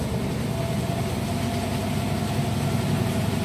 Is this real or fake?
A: real